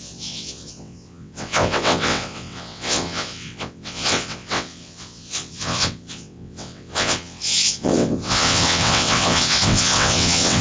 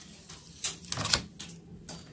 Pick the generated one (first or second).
first